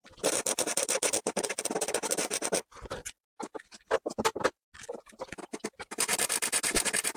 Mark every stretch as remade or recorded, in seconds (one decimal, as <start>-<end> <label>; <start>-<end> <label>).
0.0-7.2 remade